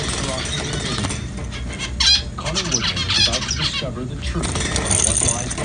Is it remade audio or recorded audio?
recorded